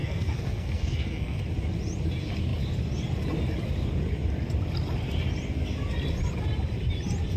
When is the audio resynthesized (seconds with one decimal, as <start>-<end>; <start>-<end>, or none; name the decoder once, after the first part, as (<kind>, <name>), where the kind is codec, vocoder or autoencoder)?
0.0-1.4 (codec, SNAC)